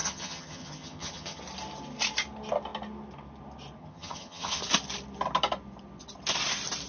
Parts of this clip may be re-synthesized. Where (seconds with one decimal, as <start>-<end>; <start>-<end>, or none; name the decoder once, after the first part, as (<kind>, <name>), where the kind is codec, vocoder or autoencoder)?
0.0-1.4 (vocoder, HiFi-GAN); 3.8-4.6